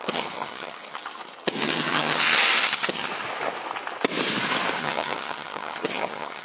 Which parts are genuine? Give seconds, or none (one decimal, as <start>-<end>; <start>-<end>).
3.1-4.8

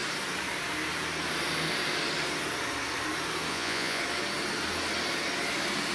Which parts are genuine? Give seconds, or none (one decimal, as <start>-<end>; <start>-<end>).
0.0-3.5; 4.0-5.9